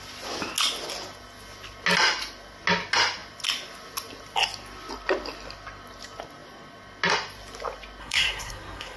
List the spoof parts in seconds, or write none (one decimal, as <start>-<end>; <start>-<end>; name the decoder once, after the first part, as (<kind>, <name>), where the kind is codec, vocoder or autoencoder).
8.0-9.0 (codec, SNAC)